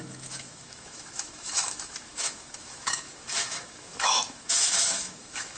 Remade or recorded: remade